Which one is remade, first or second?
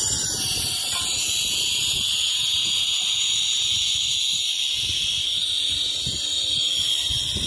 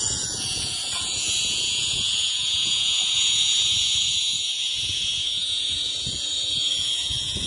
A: second